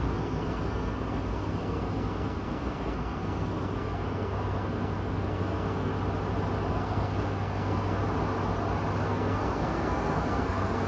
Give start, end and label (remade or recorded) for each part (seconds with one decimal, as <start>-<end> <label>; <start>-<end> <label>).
0.0-5.9 remade; 5.9-6.7 recorded; 6.7-8.0 remade; 8.0-9.0 recorded; 9.0-10.9 remade